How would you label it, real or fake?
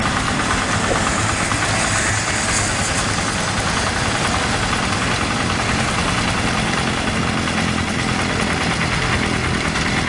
real